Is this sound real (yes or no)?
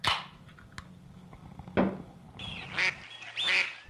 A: yes